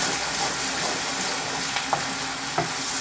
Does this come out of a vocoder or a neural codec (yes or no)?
no